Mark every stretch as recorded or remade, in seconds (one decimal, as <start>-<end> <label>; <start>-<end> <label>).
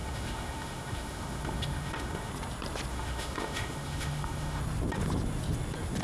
0.0-2.3 remade; 2.3-2.9 recorded; 2.9-4.6 remade; 4.6-6.0 recorded